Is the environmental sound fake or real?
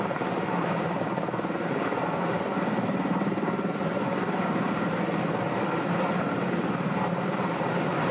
fake